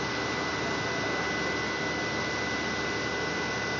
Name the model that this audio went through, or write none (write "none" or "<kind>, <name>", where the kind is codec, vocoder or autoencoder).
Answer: none